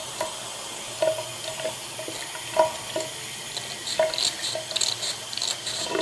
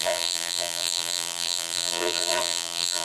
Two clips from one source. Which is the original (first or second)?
first